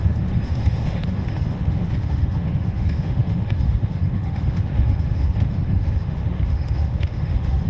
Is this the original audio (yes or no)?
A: no